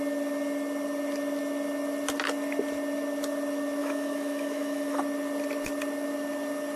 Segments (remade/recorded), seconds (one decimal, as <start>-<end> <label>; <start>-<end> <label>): 0.0-3.8 recorded; 3.8-5.0 remade; 5.0-6.8 recorded

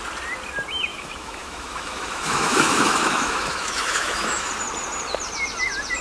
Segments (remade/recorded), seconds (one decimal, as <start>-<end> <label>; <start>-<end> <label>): 0.0-0.9 recorded; 0.9-4.5 remade; 4.5-6.0 recorded